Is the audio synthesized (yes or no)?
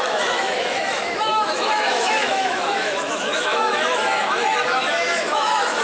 yes